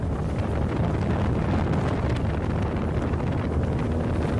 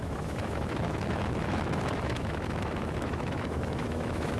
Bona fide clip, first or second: first